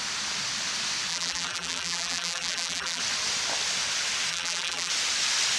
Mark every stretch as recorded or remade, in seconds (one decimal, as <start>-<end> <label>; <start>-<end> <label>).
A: 0.0-1.1 recorded; 1.1-3.0 remade; 3.0-4.3 recorded; 4.3-4.9 remade; 4.9-5.6 recorded

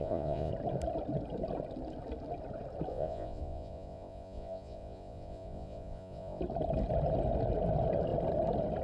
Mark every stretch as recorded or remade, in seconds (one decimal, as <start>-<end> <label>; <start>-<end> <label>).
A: 0.0-0.5 remade; 0.5-2.9 recorded; 2.9-6.4 remade; 6.4-8.8 recorded

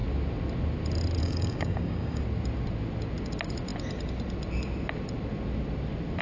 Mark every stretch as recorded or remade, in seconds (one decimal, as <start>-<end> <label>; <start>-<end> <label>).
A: 0.0-1.2 recorded; 1.2-2.2 remade; 2.2-6.2 recorded

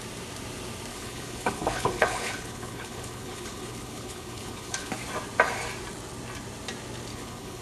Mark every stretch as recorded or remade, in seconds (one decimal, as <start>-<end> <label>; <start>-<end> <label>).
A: 0.0-0.9 recorded; 0.9-4.9 remade; 4.9-7.1 recorded; 7.1-7.6 remade

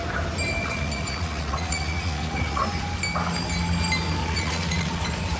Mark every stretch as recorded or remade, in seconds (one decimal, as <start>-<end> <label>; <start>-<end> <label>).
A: 0.0-0.6 recorded; 0.6-2.6 remade; 2.6-4.2 recorded; 4.2-5.0 remade; 5.0-5.4 recorded

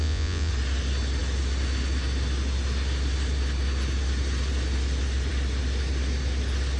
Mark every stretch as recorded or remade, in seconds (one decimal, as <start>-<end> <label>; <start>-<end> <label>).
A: 0.0-0.5 remade; 0.5-6.8 recorded